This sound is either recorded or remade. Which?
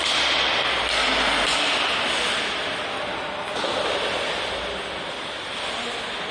recorded